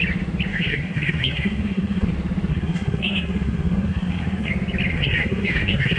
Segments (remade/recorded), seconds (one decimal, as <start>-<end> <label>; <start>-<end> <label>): 0.0-0.5 recorded; 0.5-2.1 remade; 2.1-2.5 recorded; 2.5-4.5 remade; 4.5-4.9 recorded; 4.9-6.0 remade